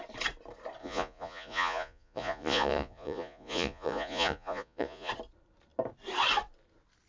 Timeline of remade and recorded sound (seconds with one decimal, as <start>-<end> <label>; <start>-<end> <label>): 0.0-0.8 recorded; 0.8-5.1 remade; 5.1-7.1 recorded